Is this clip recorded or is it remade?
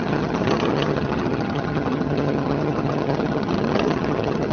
remade